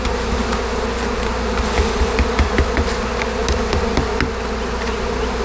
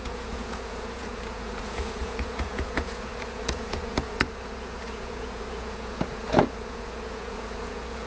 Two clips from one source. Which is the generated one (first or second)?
second